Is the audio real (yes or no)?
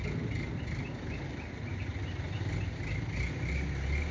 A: yes